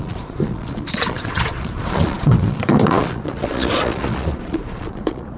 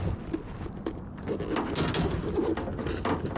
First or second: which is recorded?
second